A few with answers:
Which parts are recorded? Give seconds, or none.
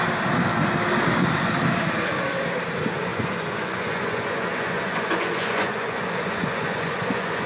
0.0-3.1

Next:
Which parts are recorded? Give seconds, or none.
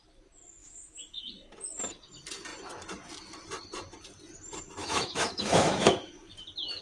0.0-0.6; 1.3-4.8; 6.3-6.8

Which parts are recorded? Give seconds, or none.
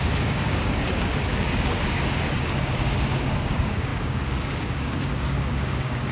none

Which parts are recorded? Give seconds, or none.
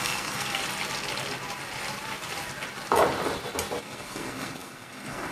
0.6-3.8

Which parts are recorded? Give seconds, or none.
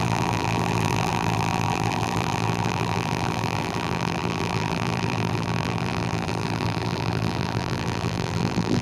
none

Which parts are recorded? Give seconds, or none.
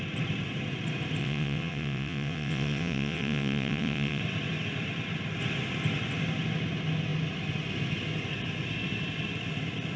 0.0-1.2; 4.2-10.0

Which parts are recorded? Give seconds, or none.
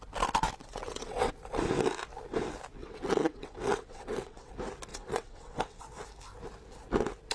0.0-0.6; 1.3-2.8; 4.5-4.9; 5.8-7.3